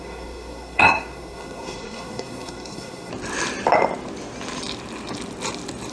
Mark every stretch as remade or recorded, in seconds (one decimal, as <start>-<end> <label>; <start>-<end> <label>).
0.0-3.1 remade; 3.1-5.9 recorded